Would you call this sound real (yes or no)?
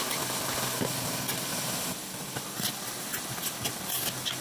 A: yes